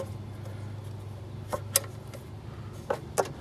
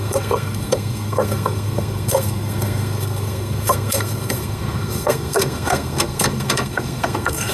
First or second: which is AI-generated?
second